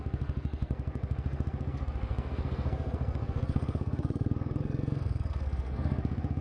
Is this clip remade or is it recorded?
remade